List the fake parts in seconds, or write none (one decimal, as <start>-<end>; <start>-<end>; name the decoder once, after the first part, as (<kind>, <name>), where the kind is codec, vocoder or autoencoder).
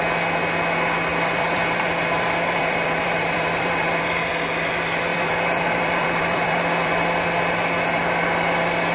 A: 1.1-4.3 (vocoder, BigVGAN v2); 5.1-7.0